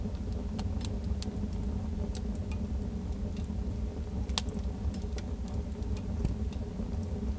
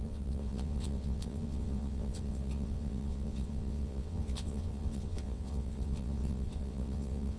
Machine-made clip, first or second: second